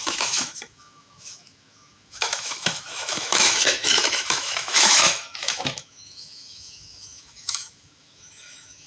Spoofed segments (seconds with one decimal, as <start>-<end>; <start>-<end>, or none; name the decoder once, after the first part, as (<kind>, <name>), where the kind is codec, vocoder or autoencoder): 0.0-8.9 (autoencoder, DAC-VAE)